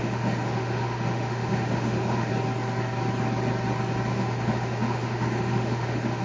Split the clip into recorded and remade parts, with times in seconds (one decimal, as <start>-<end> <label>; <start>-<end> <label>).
0.0-2.3 remade; 2.3-4.1 recorded; 4.1-6.2 remade